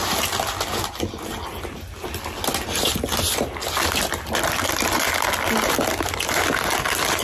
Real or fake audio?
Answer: real